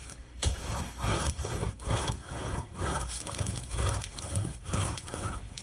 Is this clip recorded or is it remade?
remade